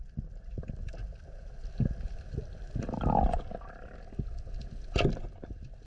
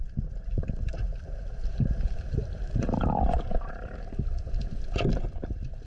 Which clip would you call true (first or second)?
first